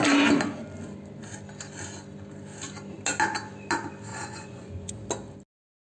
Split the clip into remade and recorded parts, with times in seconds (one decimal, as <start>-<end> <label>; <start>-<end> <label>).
0.0-4.1 recorded; 4.1-4.9 remade; 4.9-5.9 recorded